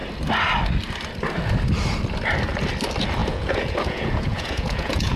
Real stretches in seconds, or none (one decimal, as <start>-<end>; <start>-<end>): 0.0-3.2